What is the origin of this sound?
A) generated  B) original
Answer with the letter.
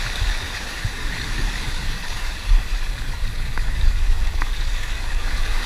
A